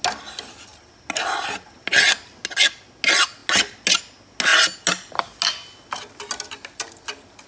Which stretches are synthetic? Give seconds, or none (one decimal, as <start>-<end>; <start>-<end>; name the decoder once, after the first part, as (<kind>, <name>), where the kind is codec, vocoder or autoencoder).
none